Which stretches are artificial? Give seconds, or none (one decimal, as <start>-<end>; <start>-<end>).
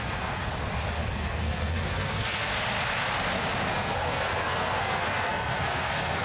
0.0-0.5; 1.1-2.5; 3.7-6.2